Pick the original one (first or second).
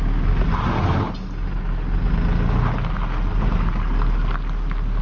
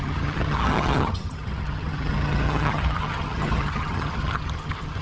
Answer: first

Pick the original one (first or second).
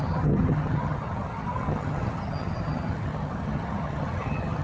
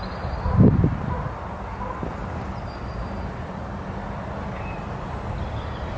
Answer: second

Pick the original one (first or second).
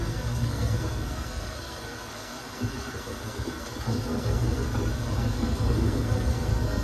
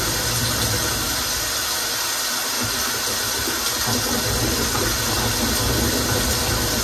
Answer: second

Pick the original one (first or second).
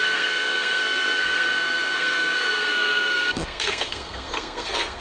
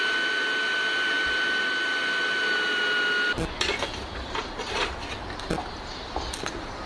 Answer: second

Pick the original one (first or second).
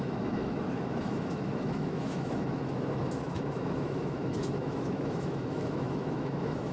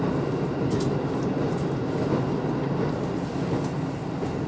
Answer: second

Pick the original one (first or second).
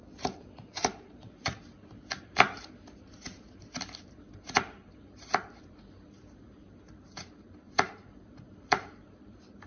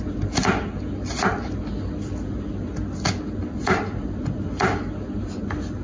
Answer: second